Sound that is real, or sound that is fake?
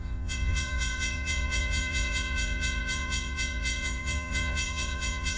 fake